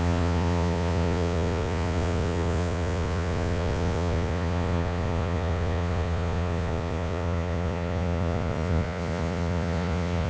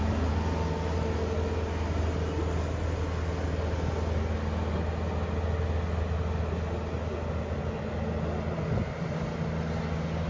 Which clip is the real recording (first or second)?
second